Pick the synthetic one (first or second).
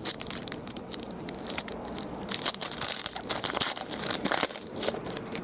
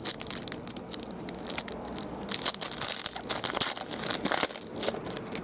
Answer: first